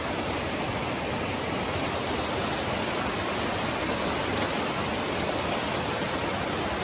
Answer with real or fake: real